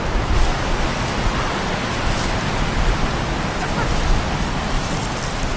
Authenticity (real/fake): real